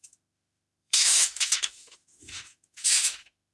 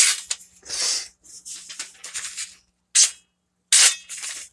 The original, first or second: second